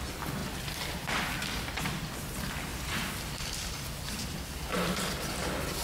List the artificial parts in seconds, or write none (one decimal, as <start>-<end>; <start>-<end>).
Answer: 2.7-4.7